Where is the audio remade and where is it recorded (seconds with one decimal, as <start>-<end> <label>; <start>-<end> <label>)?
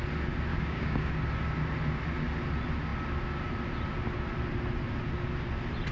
0.0-0.5 recorded; 0.5-1.1 remade; 1.1-5.9 recorded